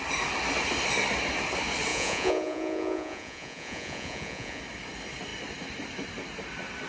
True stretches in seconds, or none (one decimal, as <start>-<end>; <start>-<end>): 0.0-1.9; 4.6-6.9